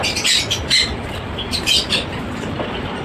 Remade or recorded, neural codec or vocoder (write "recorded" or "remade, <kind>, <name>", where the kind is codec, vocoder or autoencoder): recorded